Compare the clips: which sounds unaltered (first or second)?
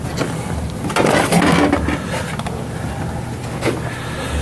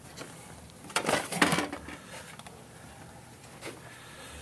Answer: first